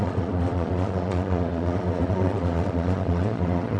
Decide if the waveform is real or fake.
fake